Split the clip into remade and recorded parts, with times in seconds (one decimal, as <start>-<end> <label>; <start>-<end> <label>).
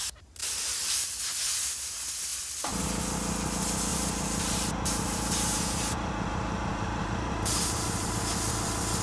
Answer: 0.0-3.9 recorded; 3.9-8.1 remade; 8.1-9.0 recorded